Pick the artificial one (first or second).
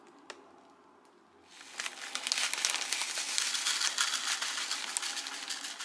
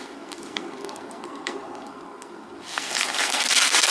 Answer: second